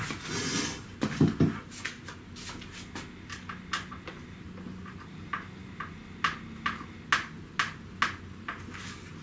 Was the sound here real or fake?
real